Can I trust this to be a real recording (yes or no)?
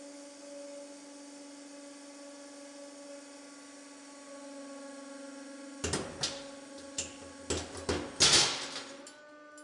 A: yes